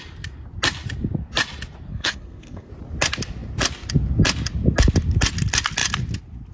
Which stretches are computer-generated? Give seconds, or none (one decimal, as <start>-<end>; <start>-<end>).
1.9-2.7